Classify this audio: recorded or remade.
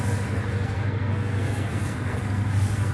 remade